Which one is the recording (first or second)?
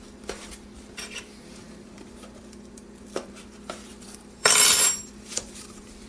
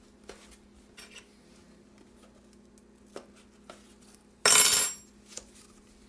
second